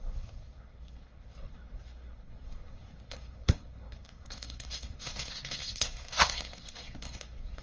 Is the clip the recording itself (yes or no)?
no